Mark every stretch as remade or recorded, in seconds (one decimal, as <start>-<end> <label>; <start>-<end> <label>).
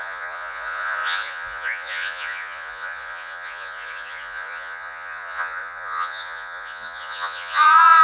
0.0-8.0 remade